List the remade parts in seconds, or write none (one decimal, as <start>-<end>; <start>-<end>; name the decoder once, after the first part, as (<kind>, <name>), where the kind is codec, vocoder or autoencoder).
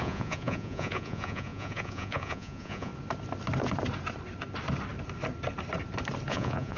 0.0-2.9 (vocoder, Vocos); 6.3-6.8